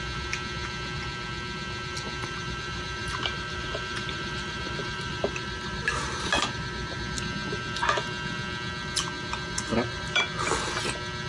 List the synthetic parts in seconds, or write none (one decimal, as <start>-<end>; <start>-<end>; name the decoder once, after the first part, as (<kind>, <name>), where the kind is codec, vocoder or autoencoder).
2.2-7.0 (vocoder, BigVGAN v2); 9.7-10.2